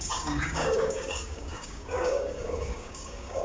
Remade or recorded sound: remade